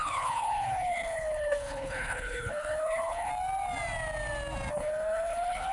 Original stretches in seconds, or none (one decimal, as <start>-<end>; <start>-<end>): 3.3-4.7